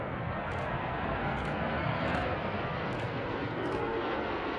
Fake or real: fake